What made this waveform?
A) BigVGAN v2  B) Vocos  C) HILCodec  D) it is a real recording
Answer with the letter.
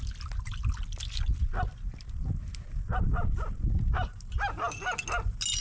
D